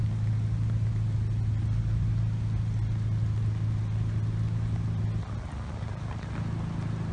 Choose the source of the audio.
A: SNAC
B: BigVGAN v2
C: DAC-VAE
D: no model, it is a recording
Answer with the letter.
D